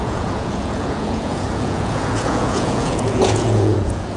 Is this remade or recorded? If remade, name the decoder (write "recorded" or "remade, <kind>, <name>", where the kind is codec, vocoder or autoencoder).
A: remade, vocoder, Vocos